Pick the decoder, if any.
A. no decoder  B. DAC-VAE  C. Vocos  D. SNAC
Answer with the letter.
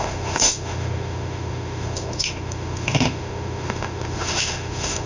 B